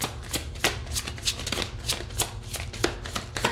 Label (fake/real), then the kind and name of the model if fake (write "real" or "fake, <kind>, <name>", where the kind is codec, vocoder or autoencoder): real